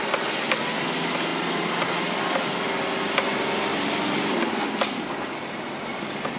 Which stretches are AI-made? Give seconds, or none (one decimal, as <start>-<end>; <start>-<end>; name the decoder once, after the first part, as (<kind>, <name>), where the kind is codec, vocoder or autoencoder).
none